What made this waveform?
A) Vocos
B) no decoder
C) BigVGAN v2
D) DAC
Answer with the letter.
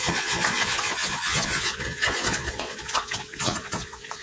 A